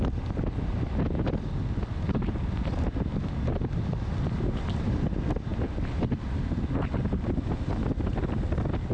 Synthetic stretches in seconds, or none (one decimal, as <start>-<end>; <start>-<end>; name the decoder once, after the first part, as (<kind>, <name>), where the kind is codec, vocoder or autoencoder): none